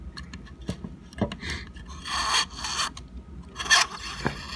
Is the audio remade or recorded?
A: recorded